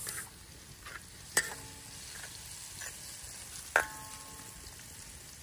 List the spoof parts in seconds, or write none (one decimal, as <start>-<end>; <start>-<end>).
none